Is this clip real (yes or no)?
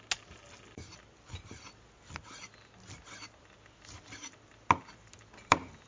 yes